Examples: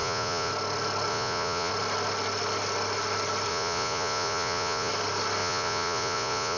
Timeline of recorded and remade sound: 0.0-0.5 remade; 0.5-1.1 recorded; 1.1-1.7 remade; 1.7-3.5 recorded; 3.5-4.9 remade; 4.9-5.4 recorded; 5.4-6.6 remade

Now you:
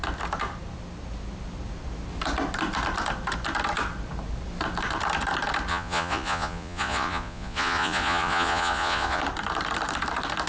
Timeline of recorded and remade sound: 0.0-5.7 recorded; 5.7-9.2 remade; 9.2-10.5 recorded

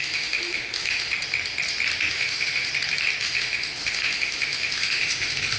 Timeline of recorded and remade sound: 0.0-1.1 remade; 1.1-2.1 recorded; 2.1-2.7 remade; 2.7-3.2 recorded; 3.2-5.6 remade

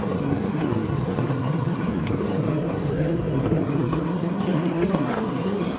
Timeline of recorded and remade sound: 0.0-5.8 remade